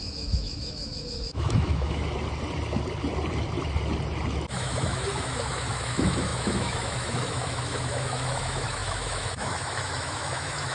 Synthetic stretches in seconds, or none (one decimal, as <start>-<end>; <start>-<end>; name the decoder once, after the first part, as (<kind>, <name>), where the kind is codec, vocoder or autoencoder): 0.0-2.0 (autoencoder, DAC-VAE); 4.5-10.7